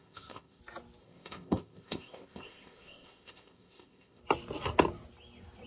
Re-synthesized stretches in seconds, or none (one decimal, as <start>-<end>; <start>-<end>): 0.0-0.6; 1.0-4.2